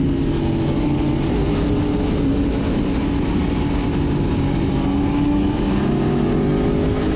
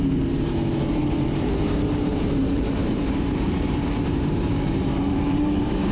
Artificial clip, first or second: second